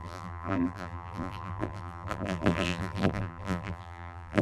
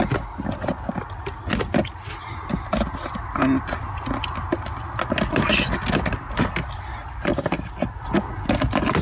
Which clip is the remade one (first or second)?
first